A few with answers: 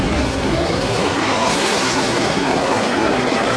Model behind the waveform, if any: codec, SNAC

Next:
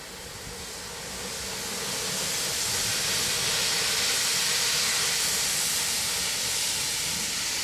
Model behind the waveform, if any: none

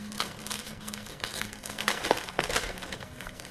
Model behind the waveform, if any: codec, SNAC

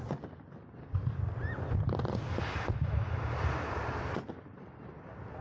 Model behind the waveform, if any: none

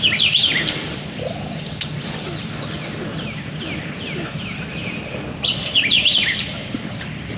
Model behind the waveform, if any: none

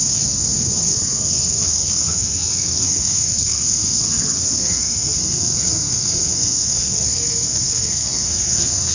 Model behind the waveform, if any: codec, SNAC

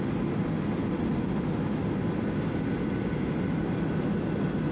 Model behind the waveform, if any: none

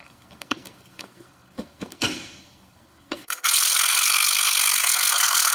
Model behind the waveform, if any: codec, SNAC